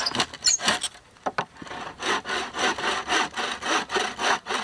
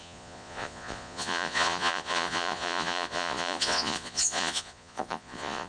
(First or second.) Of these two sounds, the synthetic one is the second